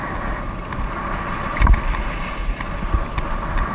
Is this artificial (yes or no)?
no